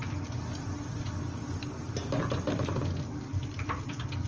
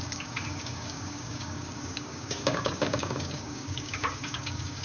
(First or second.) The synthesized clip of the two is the second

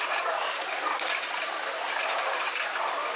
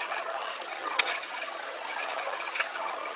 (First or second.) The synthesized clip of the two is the second